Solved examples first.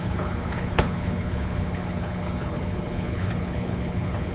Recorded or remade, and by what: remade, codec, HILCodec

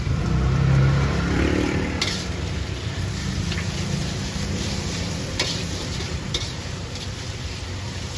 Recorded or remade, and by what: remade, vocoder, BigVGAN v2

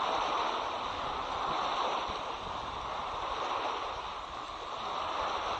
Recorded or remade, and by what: recorded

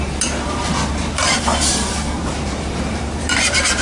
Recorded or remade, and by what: remade, vocoder, BigVGAN v2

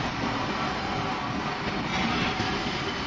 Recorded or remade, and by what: recorded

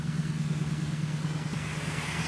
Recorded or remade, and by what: remade, codec, SNAC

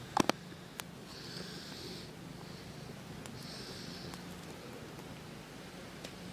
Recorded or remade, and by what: recorded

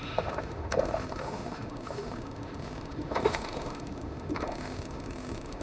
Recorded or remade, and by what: remade, autoencoder, DAC-VAE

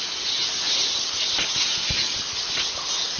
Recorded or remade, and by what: recorded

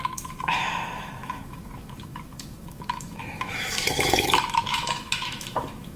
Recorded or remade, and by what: remade, autoencoder, DAC-VAE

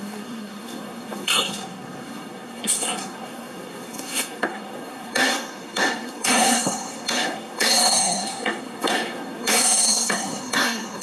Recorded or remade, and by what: remade, codec, SNAC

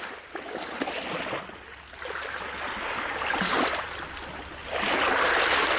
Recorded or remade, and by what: recorded